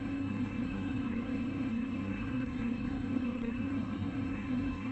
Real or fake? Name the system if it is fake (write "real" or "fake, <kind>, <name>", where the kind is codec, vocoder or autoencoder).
fake, codec, SNAC